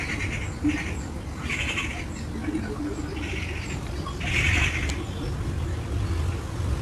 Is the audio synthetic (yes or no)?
no